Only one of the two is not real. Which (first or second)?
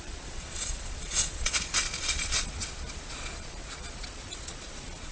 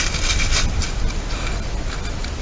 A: first